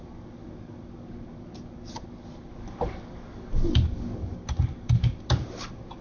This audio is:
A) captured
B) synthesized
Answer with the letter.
B